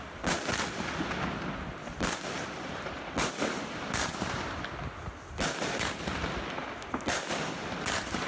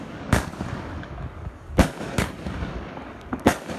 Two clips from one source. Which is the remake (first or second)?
second